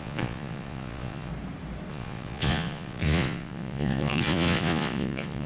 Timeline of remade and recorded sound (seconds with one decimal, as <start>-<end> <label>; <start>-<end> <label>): 0.0-1.3 remade; 1.3-1.9 recorded; 1.9-5.5 remade